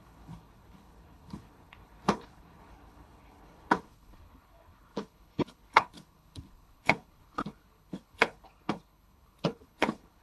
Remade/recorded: remade